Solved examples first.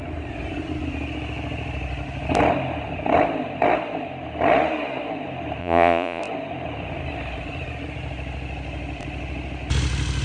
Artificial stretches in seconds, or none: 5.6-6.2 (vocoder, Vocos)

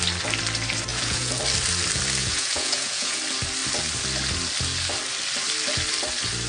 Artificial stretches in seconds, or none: 0.9-1.4 (vocoder, Vocos); 2.2-3.2

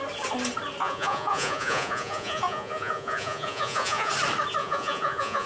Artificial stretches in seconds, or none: 0.8-4.1 (vocoder, Vocos); 4.6-5.5

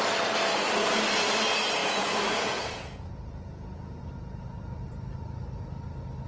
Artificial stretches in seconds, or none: 1.8-4.1 (vocoder, Vocos)

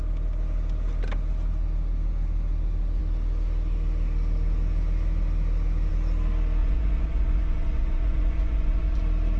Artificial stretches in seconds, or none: 6.6-9.0 (vocoder, Vocos)

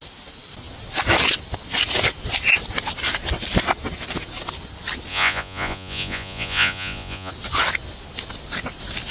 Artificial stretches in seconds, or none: 5.1-7.3 (vocoder, Vocos)